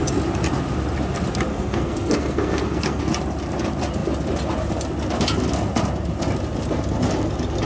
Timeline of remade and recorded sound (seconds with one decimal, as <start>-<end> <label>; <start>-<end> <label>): 0.0-1.5 recorded; 1.5-3.0 remade; 3.0-7.7 recorded